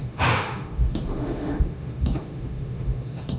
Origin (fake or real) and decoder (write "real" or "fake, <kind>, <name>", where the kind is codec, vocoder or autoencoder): fake, autoencoder, DAC-VAE